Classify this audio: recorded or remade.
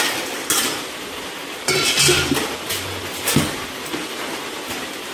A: recorded